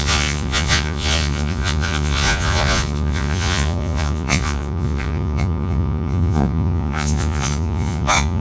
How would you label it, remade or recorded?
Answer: remade